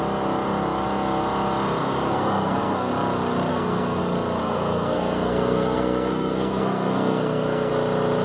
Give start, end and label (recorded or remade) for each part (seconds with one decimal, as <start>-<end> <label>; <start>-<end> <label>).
0.0-1.8 recorded; 1.8-2.9 remade; 2.9-3.5 recorded; 3.5-4.0 remade; 4.0-4.4 recorded; 4.4-7.7 remade; 7.7-8.2 recorded